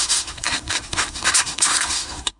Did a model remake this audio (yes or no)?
yes